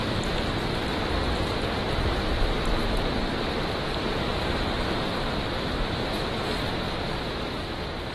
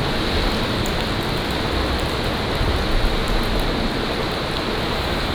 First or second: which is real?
second